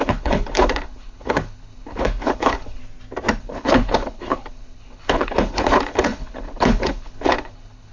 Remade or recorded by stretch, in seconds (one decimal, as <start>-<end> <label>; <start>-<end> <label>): 0.0-2.8 remade; 2.8-3.4 recorded; 3.4-7.9 remade